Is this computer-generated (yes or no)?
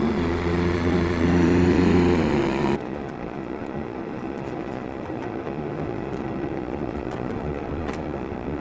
yes